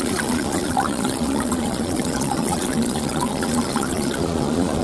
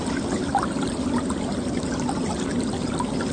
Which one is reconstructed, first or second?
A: first